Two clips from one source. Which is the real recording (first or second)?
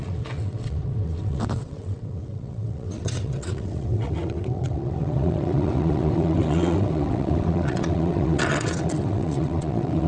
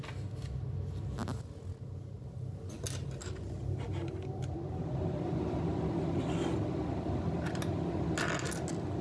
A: second